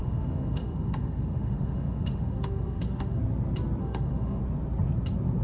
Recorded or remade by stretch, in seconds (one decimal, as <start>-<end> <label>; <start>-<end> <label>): 0.0-3.2 remade; 3.2-3.8 recorded; 3.8-4.4 remade; 4.4-5.4 recorded